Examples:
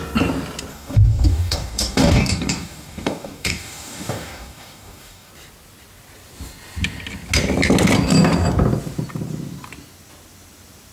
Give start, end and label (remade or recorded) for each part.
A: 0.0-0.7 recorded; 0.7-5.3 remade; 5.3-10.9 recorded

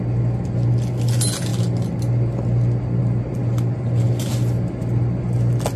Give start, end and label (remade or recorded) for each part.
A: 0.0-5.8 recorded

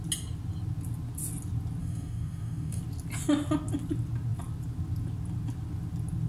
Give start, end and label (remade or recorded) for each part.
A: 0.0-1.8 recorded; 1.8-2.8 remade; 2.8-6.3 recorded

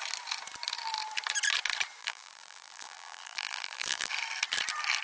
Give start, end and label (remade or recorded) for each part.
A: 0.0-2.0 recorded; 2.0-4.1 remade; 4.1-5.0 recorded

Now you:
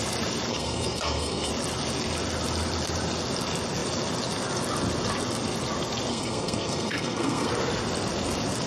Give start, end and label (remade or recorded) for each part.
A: 0.0-0.5 recorded; 0.5-1.5 remade; 1.5-6.1 recorded; 6.1-7.5 remade; 7.5-8.7 recorded